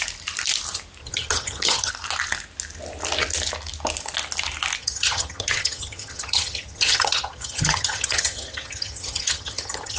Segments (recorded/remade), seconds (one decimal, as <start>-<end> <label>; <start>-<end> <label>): 0.0-1.0 recorded; 1.0-1.9 remade; 1.9-4.8 recorded; 4.8-10.0 remade